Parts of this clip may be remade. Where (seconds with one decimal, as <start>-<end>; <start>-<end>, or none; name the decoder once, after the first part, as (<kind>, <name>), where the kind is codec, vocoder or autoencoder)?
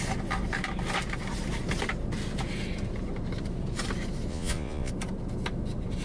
4.3-4.9 (vocoder, Vocos)